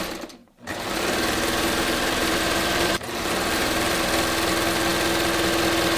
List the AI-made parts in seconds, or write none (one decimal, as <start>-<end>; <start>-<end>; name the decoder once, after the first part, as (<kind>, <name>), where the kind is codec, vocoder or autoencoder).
0.4-4.0 (vocoder, BigVGAN v2)